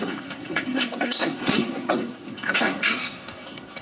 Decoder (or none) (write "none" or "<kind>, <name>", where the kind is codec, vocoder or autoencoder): codec, SNAC